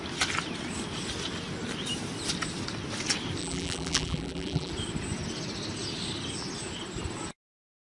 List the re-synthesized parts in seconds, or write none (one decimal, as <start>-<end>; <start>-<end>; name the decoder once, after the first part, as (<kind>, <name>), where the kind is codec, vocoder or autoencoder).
3.4-4.7 (vocoder, BigVGAN v2)